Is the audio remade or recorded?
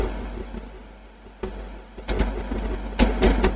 recorded